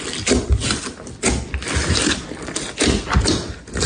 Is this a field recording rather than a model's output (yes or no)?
yes